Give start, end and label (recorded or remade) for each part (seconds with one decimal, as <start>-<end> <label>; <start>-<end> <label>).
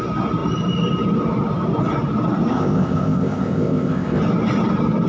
0.0-2.5 recorded; 2.5-4.2 remade; 4.2-5.1 recorded